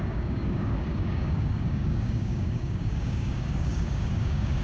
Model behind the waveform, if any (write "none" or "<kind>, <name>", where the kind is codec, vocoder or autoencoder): codec, DAC